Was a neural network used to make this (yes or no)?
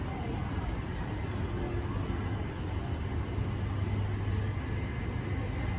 no